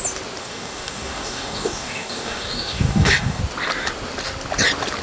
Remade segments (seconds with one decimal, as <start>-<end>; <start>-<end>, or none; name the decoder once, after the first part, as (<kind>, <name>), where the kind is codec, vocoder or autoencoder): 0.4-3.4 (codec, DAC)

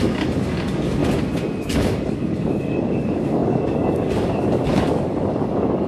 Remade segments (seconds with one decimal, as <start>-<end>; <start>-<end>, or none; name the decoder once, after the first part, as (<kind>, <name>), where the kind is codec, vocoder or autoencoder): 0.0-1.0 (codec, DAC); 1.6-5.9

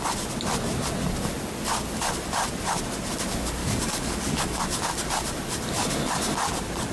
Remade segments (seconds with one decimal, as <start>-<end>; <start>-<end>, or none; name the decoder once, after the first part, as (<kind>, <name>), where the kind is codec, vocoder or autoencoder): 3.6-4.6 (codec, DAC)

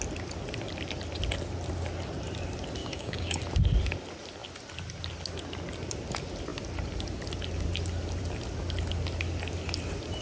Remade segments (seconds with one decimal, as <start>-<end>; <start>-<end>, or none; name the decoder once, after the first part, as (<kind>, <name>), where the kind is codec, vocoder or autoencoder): 2.8-3.4 (codec, DAC)

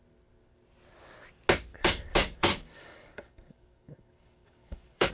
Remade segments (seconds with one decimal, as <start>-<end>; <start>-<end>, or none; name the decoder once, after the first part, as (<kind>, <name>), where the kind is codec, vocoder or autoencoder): 1.7-5.1 (codec, DAC)